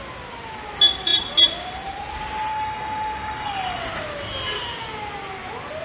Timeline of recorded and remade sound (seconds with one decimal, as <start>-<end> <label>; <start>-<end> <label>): 0.0-2.5 recorded; 2.5-3.8 remade; 3.8-5.8 recorded

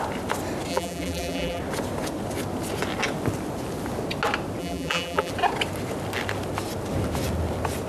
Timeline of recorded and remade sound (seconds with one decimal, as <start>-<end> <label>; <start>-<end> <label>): 0.0-0.7 recorded; 0.7-1.6 remade; 1.6-4.6 recorded; 4.6-5.3 remade; 5.3-7.9 recorded

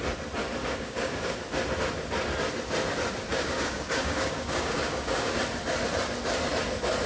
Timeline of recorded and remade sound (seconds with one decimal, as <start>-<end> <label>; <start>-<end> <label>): 0.0-0.6 recorded; 0.6-1.4 remade; 1.4-3.3 recorded; 3.3-5.4 remade; 5.4-7.1 recorded

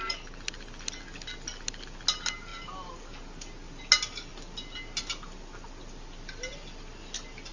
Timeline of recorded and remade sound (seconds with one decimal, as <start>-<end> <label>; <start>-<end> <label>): 0.0-7.5 recorded

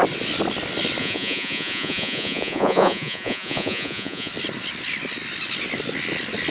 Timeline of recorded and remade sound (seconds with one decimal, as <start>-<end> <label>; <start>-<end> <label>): 0.0-1.0 recorded; 1.0-4.3 remade; 4.3-6.5 recorded

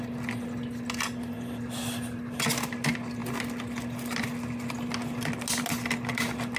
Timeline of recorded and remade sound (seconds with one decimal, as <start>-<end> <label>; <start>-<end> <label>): 0.0-6.6 recorded

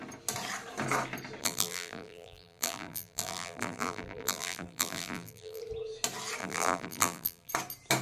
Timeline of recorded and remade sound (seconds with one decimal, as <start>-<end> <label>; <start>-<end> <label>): 0.0-1.4 recorded; 1.4-5.6 remade; 5.6-6.4 recorded; 6.4-7.5 remade; 7.5-8.0 recorded